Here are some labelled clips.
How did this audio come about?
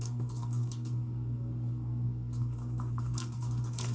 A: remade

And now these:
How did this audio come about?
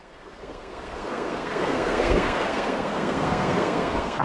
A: remade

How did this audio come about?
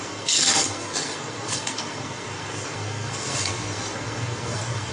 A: remade